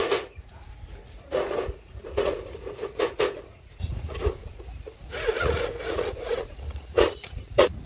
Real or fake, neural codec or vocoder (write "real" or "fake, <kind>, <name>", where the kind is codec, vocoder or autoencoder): fake, vocoder, Vocos